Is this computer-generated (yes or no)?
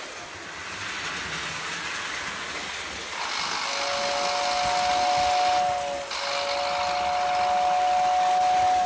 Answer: no